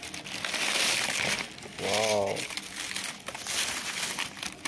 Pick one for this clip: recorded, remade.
recorded